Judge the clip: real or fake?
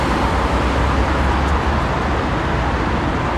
real